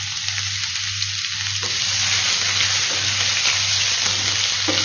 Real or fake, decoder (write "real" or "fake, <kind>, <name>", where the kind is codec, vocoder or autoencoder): real